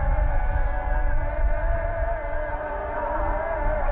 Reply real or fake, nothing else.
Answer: real